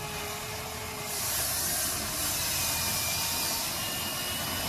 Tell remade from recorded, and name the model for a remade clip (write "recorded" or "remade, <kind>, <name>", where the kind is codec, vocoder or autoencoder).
recorded